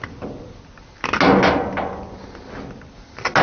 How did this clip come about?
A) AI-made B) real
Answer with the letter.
B